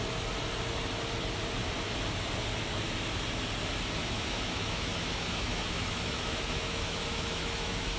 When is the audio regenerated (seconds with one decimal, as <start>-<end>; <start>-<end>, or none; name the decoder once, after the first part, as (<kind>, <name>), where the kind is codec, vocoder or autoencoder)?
4.0-8.0 (autoencoder, DAC-VAE)

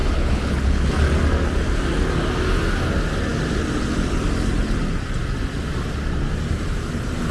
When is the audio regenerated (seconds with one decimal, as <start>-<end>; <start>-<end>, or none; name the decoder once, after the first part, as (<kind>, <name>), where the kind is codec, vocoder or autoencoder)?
0.0-0.9 (codec, HILCodec)

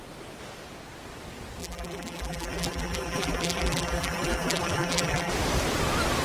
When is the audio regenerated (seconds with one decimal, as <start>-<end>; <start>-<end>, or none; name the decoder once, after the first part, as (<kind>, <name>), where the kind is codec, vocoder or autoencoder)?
1.6-5.3 (vocoder, BigVGAN v2)

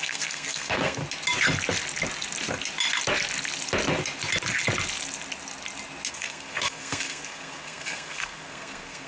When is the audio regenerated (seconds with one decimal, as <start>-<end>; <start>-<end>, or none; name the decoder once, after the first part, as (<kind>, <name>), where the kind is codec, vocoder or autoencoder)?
0.0-1.0 (codec, SNAC); 6.1-9.1

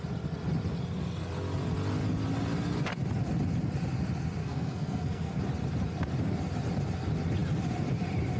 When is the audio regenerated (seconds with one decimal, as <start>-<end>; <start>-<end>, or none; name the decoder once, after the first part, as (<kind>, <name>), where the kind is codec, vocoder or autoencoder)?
4.4-5.4 (codec, SNAC)

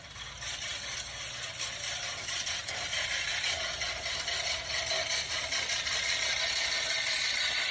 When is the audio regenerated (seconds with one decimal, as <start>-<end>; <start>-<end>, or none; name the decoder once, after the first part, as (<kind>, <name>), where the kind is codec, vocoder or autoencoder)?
none